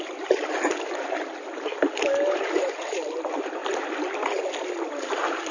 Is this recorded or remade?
recorded